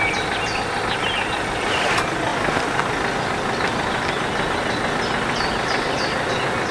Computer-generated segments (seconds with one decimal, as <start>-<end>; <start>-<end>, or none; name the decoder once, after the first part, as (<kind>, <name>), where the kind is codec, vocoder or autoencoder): none